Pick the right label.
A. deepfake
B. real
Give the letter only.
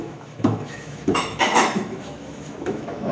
A